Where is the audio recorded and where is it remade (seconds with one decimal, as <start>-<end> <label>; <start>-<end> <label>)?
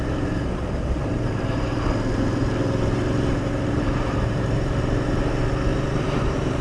0.0-1.1 recorded; 1.1-5.1 remade; 5.1-5.7 recorded; 5.7-6.6 remade